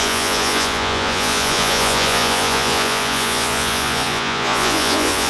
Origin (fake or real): fake